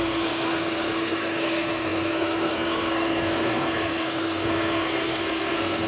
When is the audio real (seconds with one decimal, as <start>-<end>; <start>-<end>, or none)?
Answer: none